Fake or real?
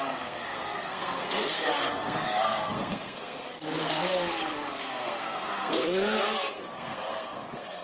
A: fake